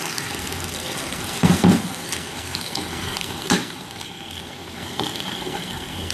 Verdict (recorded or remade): remade